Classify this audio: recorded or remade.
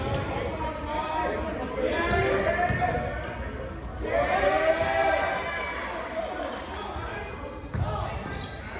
recorded